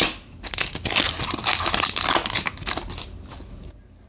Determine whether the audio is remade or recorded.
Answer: recorded